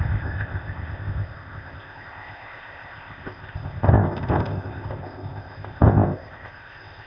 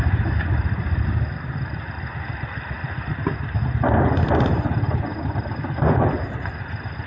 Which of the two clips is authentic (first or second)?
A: second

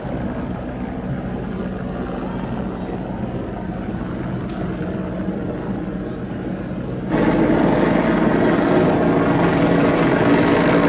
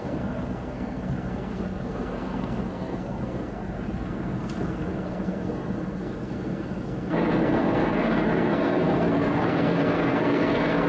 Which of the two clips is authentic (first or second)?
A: first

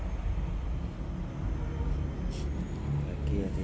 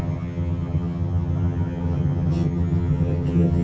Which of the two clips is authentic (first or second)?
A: first